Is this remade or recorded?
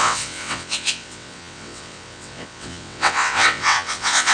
remade